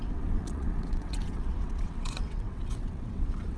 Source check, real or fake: fake